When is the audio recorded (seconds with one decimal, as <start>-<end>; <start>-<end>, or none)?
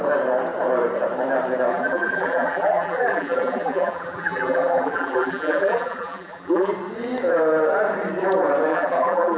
0.0-1.7; 6.7-8.7